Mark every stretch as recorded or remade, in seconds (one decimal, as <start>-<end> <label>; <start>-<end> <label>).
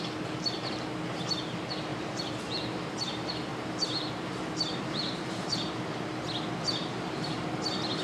0.0-1.9 recorded; 1.9-2.5 remade; 2.5-3.5 recorded; 3.5-5.8 remade; 5.8-6.8 recorded; 6.8-7.4 remade; 7.4-8.0 recorded